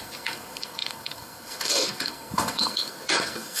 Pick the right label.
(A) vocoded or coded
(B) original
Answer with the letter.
A